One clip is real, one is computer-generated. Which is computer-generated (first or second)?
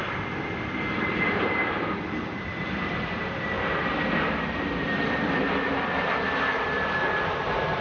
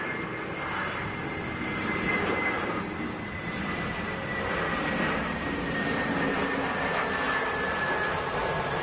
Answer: first